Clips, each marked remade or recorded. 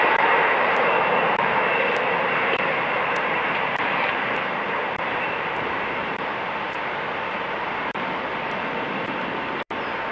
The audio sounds remade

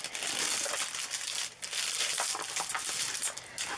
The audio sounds recorded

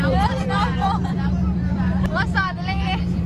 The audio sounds remade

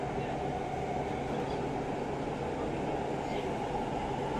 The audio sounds recorded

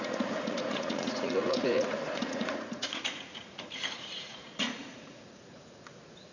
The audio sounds remade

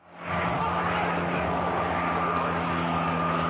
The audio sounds recorded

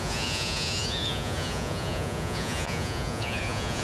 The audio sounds remade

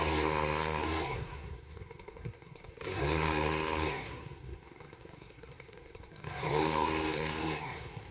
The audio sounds remade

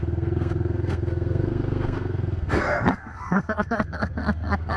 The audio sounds remade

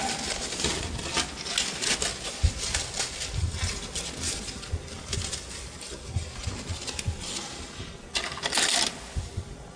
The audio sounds recorded